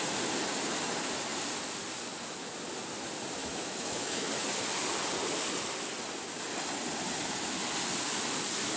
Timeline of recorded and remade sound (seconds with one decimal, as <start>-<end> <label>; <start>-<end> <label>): 0.0-3.4 recorded; 3.4-4.3 remade; 4.3-8.8 recorded